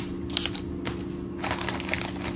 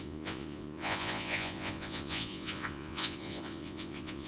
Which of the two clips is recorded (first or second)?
first